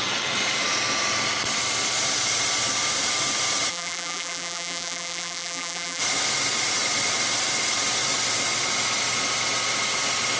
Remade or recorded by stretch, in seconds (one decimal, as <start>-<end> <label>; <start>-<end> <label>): 0.0-3.7 recorded; 3.7-6.0 remade; 6.0-10.4 recorded